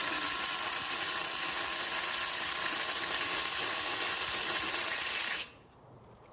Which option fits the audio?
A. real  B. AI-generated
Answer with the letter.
B